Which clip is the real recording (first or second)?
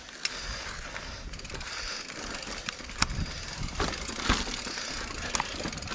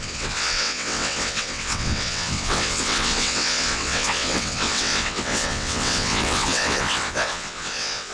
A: first